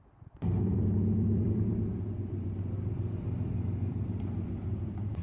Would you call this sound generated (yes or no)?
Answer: yes